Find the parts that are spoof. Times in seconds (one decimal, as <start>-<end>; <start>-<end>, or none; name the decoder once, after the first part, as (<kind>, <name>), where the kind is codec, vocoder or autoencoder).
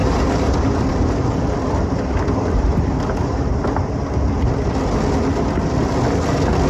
0.0-4.0 (vocoder, BigVGAN v2)